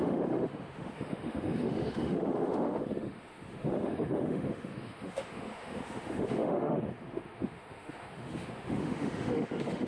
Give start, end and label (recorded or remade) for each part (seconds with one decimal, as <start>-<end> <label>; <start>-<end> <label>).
0.0-9.9 remade